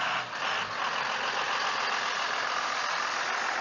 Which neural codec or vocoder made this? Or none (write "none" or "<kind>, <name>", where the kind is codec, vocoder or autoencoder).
none